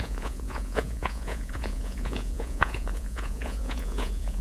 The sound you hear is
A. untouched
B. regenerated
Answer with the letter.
B